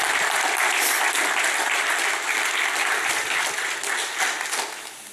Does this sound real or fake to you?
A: fake